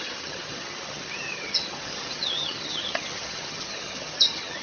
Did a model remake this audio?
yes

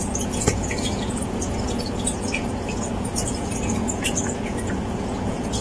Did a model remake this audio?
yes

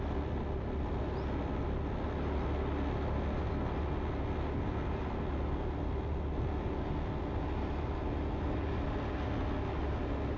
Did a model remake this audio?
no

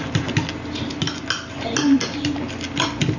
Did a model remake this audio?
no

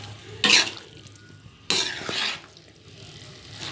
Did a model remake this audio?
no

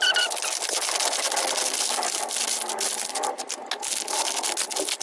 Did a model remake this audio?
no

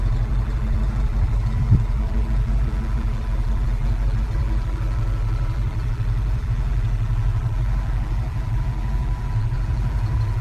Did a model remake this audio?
yes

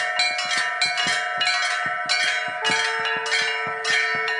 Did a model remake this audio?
no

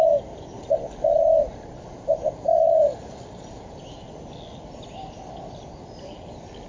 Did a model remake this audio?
no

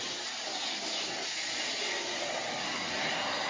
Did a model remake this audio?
no